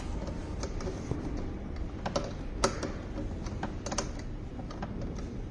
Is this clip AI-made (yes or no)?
no